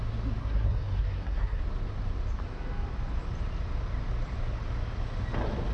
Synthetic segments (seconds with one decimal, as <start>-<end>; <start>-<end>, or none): 0.4-1.6